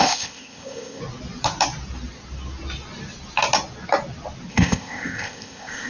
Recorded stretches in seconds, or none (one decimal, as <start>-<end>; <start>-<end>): 1.0-4.5